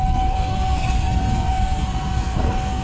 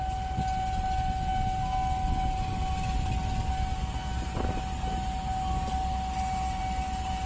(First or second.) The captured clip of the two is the second